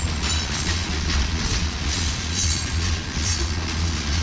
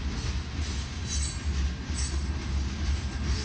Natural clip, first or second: second